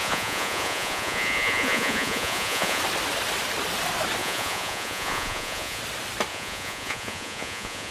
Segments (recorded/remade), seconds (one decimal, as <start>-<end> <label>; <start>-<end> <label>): 0.0-2.8 remade; 2.8-4.2 recorded; 4.2-5.8 remade; 5.8-6.3 recorded; 6.3-7.9 remade

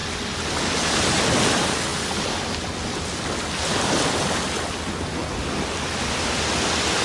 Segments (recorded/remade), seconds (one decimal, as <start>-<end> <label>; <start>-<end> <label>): 0.0-7.0 recorded

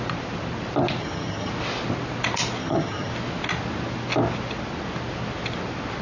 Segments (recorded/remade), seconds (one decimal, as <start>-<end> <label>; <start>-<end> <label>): 0.0-1.0 recorded; 1.0-1.5 remade; 1.5-2.6 recorded; 2.6-3.1 remade; 3.1-6.0 recorded

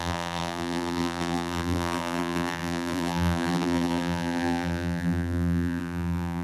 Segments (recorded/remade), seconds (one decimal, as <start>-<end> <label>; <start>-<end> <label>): 0.0-6.4 remade

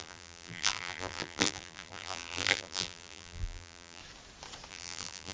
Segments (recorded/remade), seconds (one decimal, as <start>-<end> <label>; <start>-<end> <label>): 0.0-4.0 remade; 4.0-4.7 recorded; 4.7-5.3 remade

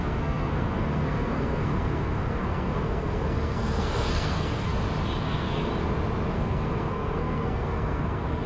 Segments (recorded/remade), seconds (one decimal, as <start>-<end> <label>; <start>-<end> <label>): 0.0-4.7 remade; 4.7-5.2 recorded; 5.2-5.7 remade; 5.7-6.3 recorded; 6.3-8.5 remade

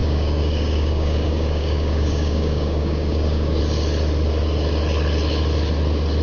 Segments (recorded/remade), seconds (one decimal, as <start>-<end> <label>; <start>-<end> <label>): 0.0-3.6 remade; 3.6-6.2 recorded

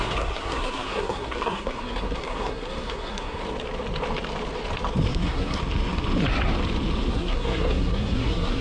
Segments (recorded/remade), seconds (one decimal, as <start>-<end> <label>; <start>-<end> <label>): 0.0-3.4 remade; 3.4-5.1 recorded; 5.1-5.6 remade; 5.6-7.1 recorded; 7.1-8.6 remade